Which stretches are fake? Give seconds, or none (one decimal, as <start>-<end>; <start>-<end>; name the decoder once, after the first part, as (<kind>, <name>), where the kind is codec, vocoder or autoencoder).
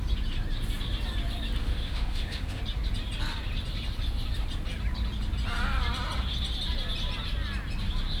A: 1.6-2.6 (autoencoder, DAC-VAE)